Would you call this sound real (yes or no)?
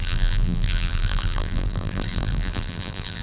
no